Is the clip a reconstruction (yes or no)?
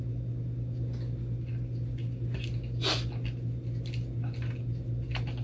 no